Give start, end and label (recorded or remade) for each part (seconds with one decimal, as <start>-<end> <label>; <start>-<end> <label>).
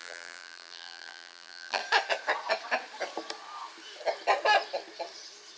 0.0-1.8 remade; 1.8-5.6 recorded